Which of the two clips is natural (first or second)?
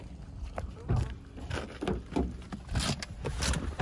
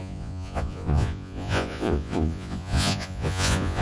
first